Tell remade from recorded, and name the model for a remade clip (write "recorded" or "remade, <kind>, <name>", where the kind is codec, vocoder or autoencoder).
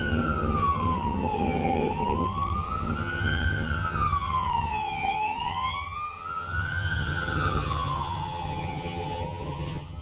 remade, vocoder, HiFi-GAN